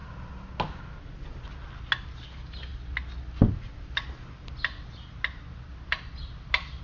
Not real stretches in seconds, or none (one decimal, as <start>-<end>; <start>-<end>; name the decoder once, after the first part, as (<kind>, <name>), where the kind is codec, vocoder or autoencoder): none